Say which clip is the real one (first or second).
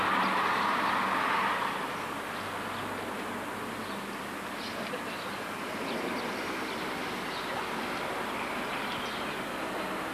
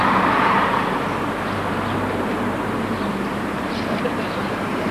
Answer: first